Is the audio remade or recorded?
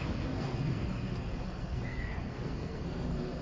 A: remade